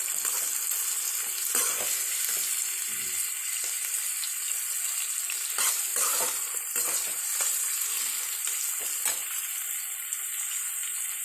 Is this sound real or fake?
real